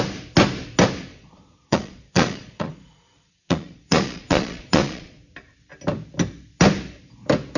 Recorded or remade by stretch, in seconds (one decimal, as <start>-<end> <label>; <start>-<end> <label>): 0.0-1.1 recorded; 1.1-5.2 remade; 5.2-7.6 recorded